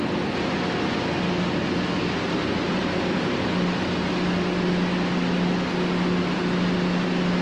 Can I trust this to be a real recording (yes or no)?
yes